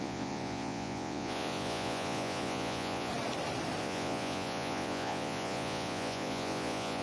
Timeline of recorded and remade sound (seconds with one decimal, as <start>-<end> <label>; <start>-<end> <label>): 0.0-3.1 remade; 3.1-3.8 recorded; 3.8-7.0 remade